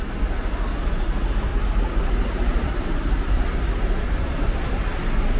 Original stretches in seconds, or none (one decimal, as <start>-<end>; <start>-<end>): 0.0-1.5; 4.7-5.4